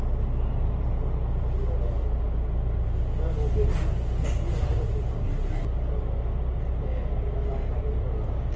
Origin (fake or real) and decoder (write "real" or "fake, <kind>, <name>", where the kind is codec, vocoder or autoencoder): real